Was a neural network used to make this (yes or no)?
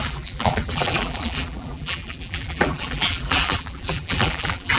yes